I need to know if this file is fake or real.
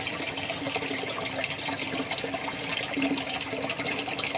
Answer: real